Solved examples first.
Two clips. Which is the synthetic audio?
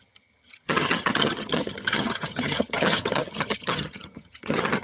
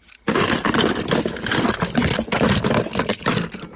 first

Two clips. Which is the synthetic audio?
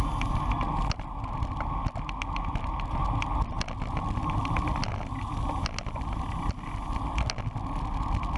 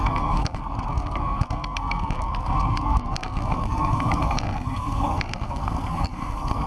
second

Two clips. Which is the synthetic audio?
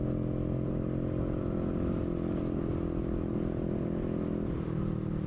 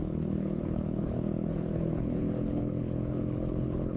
second